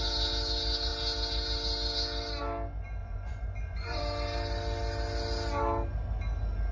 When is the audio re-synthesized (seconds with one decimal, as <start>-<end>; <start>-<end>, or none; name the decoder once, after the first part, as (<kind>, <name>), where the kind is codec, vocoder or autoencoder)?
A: 3.0-4.0 (vocoder, Vocos)